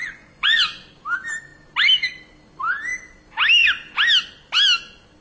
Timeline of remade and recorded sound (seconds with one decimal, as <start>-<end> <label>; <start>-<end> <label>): 0.0-0.6 remade; 0.6-5.2 recorded